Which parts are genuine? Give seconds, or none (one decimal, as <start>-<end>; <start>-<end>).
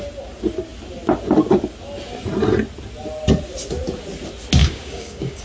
0.0-4.6